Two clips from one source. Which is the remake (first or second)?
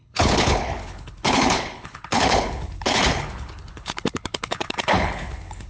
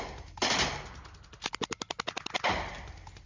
first